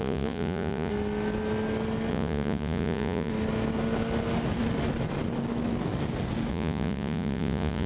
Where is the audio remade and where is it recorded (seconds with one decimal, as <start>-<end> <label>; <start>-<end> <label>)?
0.0-0.9 remade; 0.9-2.1 recorded; 2.1-3.3 remade; 3.3-6.5 recorded; 6.5-7.9 remade